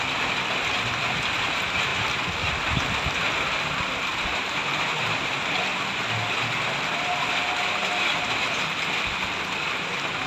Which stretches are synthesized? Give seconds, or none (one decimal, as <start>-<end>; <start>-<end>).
4.1-5.3